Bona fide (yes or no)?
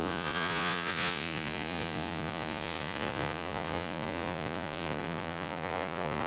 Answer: no